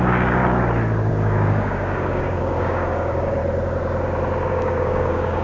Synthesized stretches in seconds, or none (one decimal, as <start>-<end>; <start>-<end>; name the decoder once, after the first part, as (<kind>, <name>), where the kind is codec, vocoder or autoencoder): 0.0-0.4 (codec, DAC); 1.1-3.4; 4.5-5.4